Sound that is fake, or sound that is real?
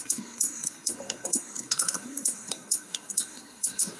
fake